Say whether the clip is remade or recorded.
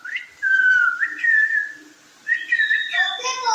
recorded